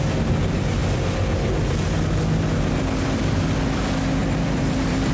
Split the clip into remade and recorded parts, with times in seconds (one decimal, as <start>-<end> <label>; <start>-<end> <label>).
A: 0.0-4.2 recorded; 4.2-5.1 remade